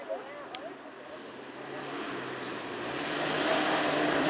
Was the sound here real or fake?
real